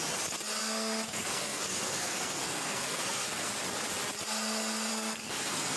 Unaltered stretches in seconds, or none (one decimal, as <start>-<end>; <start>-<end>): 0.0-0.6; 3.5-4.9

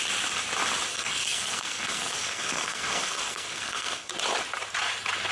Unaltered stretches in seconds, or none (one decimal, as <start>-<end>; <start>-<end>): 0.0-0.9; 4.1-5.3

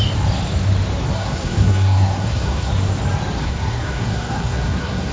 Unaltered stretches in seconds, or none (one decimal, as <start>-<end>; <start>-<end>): 0.0-1.1; 2.7-3.4

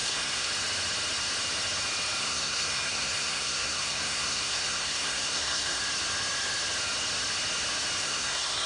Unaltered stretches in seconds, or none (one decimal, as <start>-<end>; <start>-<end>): 0.5-2.2; 5.8-8.0

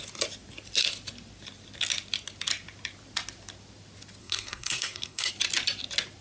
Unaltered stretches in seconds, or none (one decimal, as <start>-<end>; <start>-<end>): 0.0-4.2; 5.3-6.2

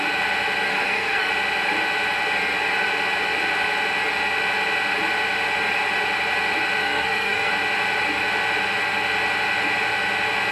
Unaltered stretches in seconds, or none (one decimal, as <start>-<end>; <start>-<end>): 0.0-0.7; 1.3-6.8; 7.5-10.5

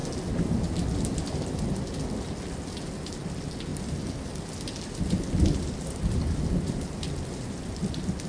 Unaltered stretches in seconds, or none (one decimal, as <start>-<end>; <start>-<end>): 0.0-8.3

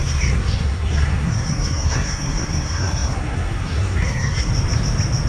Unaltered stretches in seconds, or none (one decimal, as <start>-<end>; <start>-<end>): 4.5-5.3